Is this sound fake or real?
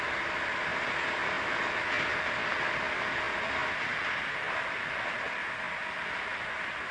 real